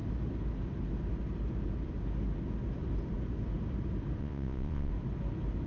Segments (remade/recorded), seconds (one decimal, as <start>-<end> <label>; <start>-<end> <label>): 0.0-4.2 recorded; 4.2-4.9 remade; 4.9-5.7 recorded